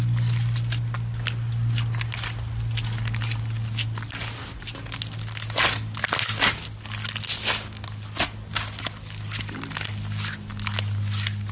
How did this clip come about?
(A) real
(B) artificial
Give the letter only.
A